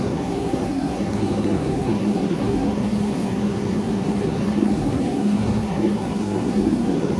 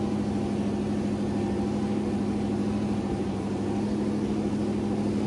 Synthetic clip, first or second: first